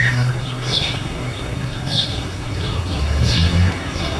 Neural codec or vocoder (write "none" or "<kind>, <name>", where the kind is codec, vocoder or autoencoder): codec, SNAC